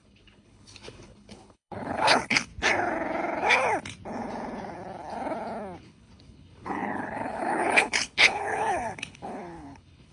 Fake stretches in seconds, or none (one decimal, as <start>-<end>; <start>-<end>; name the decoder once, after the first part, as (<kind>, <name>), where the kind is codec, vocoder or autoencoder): 0.0-2.5 (codec, HILCodec); 5.8-10.1